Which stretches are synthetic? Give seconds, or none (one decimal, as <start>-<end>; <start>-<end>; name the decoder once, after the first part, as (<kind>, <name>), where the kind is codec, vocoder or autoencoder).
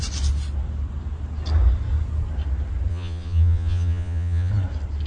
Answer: 2.9-4.5 (vocoder, Vocos)